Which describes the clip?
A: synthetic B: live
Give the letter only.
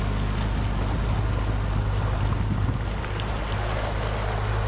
B